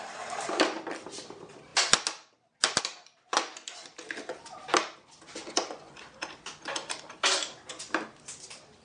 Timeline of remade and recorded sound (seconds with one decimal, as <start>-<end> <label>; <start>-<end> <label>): 0.0-5.4 recorded; 5.4-6.0 remade; 6.0-8.8 recorded

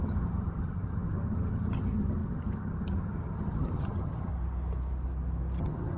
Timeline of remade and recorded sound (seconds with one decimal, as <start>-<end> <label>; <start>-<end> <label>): 0.0-4.3 remade; 4.3-5.6 recorded; 5.6-6.0 remade

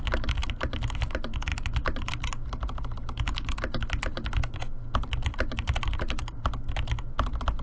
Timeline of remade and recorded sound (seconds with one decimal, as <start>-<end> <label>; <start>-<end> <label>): 0.0-7.6 recorded

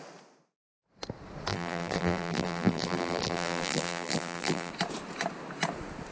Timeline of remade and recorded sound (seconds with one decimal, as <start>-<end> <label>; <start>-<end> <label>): 0.0-1.5 recorded; 1.5-4.7 remade; 4.7-6.1 recorded

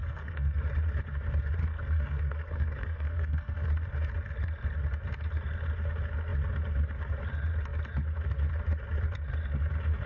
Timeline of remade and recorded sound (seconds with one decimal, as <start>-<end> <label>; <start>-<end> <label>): 0.0-0.6 remade; 0.6-1.6 recorded; 1.6-3.7 remade; 3.7-10.1 recorded

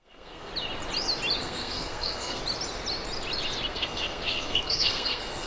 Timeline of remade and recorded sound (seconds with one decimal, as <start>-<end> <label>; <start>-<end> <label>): 0.0-0.5 remade; 0.5-1.4 recorded; 1.4-2.4 remade; 2.4-3.7 recorded; 3.7-5.5 remade

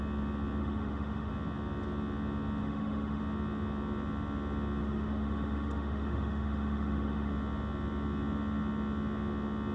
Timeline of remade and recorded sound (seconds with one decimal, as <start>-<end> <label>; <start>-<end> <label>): 0.0-0.6 recorded; 0.6-1.3 remade; 1.3-2.6 recorded; 2.6-3.2 remade; 3.2-4.8 recorded; 4.8-7.3 remade; 7.3-9.7 recorded

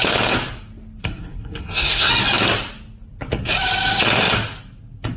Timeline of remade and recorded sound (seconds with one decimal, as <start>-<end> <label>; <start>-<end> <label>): 0.0-1.0 recorded; 1.0-2.1 remade; 2.1-5.2 recorded